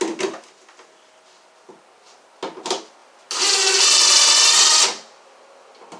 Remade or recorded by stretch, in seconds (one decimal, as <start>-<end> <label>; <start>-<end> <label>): 0.0-6.0 recorded